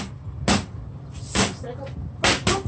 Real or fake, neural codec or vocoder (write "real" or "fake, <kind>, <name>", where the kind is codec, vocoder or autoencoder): real